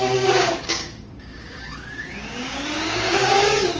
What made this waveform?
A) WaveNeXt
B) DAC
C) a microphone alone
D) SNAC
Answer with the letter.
B